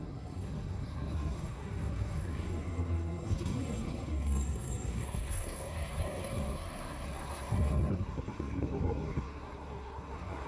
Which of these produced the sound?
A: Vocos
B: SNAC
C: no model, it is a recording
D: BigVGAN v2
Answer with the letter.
B